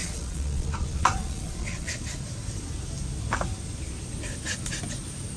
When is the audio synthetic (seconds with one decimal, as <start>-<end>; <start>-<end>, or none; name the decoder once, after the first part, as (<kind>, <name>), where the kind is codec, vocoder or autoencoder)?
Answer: 0.0-1.9 (vocoder, Vocos)

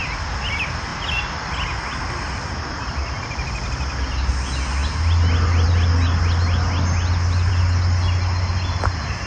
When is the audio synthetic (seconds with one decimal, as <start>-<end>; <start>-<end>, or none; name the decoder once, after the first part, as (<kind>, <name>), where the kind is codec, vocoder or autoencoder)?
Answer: none